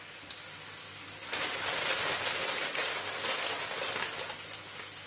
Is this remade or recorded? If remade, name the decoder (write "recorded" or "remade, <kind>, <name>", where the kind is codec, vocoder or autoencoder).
recorded